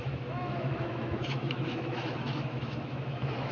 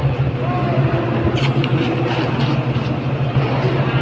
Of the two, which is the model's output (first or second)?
first